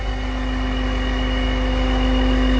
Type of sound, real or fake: real